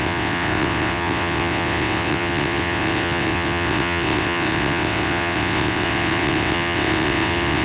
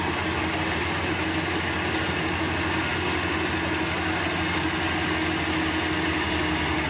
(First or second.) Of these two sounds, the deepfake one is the first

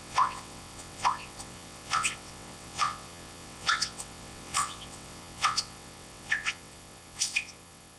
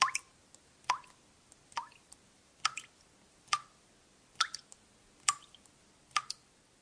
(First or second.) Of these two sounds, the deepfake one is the first